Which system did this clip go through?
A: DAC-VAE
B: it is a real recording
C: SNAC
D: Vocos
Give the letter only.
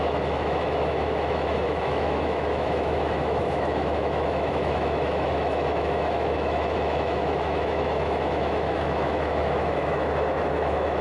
A